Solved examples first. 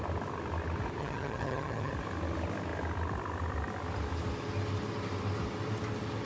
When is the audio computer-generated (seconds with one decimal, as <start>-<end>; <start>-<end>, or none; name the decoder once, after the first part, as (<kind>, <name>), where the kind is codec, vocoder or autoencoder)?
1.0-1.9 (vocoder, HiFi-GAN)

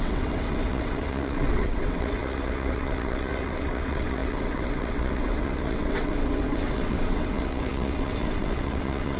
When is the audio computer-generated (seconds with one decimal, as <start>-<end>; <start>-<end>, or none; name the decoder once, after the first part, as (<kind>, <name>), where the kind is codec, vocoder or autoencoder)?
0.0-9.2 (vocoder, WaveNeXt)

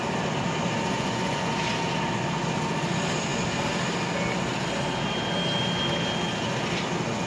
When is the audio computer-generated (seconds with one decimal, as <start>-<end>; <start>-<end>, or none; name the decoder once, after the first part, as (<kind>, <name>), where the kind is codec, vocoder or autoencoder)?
0.9-1.5 (vocoder, Vocos)